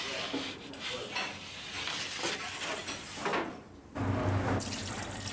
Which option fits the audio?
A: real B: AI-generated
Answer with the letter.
A